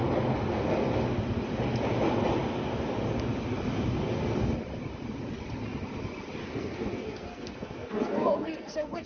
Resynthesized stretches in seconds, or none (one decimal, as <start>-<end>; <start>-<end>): 6.4-9.1